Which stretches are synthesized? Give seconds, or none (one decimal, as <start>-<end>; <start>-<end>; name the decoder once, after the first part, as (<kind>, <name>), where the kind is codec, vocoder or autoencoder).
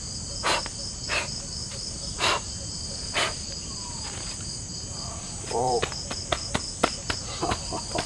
1.6-6.5 (vocoder, BigVGAN v2)